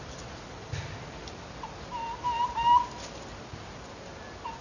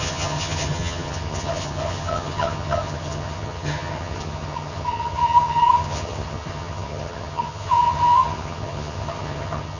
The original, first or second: first